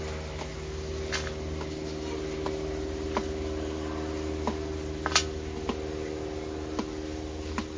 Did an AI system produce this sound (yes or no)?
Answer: no